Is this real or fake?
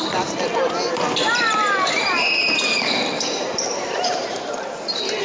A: fake